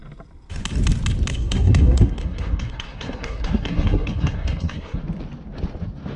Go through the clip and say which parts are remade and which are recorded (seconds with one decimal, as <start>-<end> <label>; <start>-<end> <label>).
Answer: 0.0-1.3 recorded; 1.3-5.0 remade; 5.0-6.2 recorded